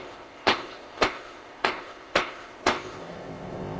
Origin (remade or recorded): remade